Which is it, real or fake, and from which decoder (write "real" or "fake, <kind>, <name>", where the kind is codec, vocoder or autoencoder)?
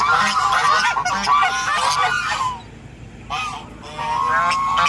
real